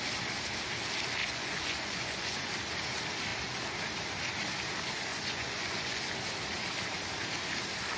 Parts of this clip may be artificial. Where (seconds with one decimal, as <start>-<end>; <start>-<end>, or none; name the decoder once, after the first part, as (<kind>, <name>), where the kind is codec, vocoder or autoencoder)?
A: 1.2-2.5 (vocoder, Vocos); 5.1-6.1